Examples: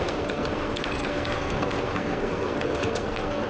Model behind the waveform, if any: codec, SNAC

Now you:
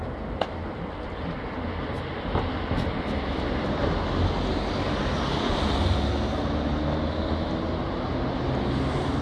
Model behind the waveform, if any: none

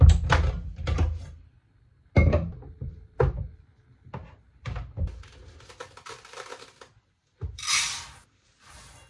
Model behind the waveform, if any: none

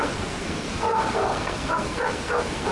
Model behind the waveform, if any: codec, SNAC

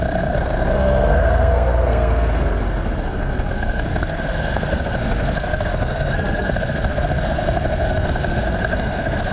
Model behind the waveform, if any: codec, SNAC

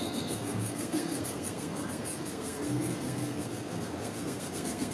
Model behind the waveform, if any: codec, SNAC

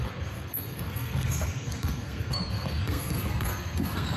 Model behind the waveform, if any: codec, SNAC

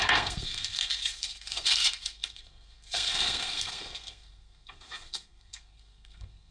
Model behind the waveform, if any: codec, SNAC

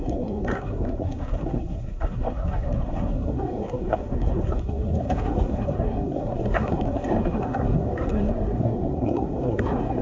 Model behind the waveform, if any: codec, SNAC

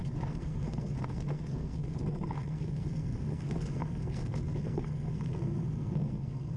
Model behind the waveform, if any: codec, SNAC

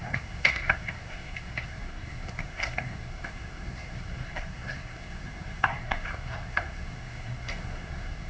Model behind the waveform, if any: codec, SNAC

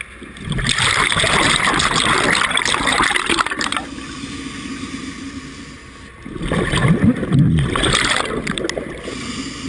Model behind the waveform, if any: none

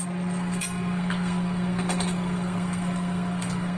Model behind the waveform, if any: codec, SNAC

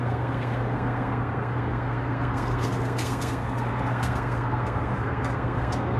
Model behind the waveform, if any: codec, SNAC